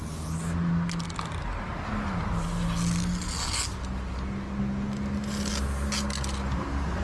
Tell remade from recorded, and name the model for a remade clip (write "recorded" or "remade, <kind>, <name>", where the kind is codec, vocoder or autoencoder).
recorded